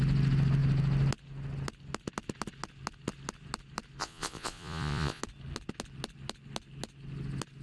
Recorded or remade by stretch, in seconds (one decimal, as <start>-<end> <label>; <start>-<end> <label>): 0.0-4.0 recorded; 4.0-5.2 remade; 5.2-7.6 recorded